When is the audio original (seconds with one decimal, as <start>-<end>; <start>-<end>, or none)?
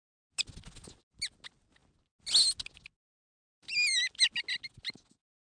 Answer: 0.0-5.4